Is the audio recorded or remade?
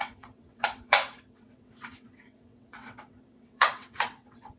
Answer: remade